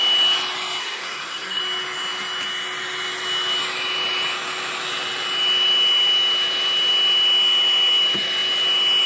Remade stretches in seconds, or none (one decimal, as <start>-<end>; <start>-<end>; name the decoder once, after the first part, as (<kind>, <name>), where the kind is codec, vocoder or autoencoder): 0.8-1.6 (codec, SNAC)